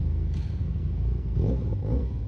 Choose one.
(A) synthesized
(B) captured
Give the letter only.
A